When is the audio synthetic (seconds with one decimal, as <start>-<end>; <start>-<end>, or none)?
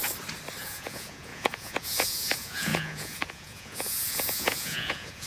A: 0.6-5.3